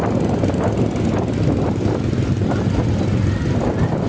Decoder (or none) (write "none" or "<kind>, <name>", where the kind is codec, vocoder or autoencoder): none